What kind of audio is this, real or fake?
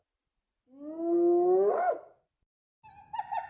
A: real